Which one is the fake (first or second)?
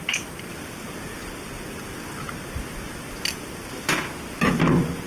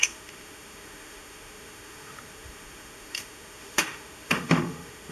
second